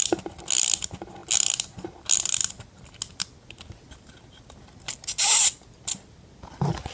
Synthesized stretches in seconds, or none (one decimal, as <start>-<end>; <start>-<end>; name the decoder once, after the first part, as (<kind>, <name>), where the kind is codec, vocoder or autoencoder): none

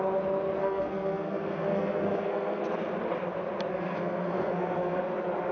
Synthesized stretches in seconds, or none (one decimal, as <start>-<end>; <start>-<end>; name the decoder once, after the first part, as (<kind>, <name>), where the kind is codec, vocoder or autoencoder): 0.6-2.6 (codec, SNAC); 3.7-5.0

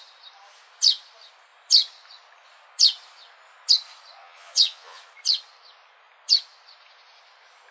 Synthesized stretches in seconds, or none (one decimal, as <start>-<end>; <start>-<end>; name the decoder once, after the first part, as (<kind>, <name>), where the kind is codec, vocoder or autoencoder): 4.2-5.0 (vocoder, Vocos)

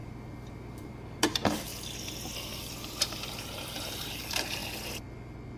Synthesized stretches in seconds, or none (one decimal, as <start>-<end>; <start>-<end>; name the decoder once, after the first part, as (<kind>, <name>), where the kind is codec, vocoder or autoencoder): 0.8-1.7 (vocoder, BigVGAN v2); 3.4-4.6

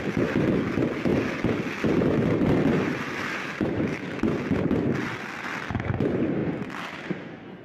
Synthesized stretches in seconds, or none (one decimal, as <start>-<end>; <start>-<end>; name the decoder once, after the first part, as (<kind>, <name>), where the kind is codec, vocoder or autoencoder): none

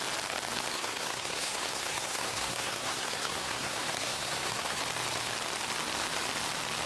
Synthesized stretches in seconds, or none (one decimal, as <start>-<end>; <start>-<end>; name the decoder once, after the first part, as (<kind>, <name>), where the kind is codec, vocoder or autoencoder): 0.7-4.8 (codec, SNAC)